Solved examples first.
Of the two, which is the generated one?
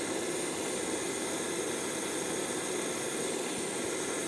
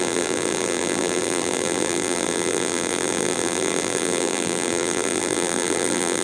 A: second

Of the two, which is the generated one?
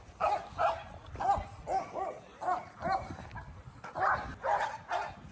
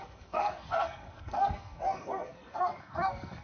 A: second